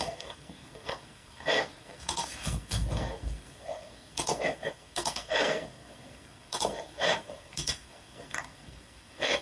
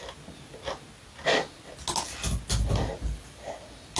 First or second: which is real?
second